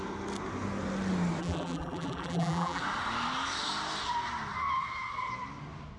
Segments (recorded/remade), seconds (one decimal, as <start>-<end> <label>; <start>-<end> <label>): 0.0-1.4 recorded; 1.4-2.8 remade; 2.8-6.0 recorded